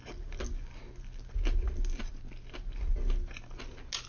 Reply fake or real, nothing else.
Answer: real